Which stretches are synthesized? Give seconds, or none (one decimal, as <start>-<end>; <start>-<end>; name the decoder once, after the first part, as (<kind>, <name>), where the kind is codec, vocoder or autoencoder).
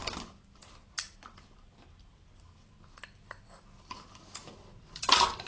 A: none